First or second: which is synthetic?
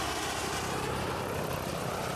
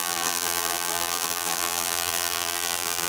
second